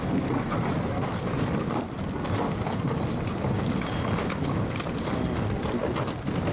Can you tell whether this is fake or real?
real